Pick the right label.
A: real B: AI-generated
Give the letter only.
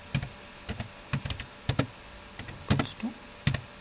A